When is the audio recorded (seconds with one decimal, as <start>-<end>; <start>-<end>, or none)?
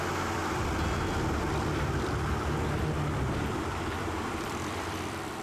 0.4-3.6